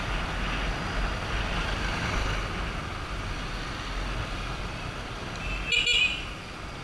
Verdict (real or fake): real